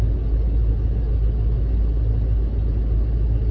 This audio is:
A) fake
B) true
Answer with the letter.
B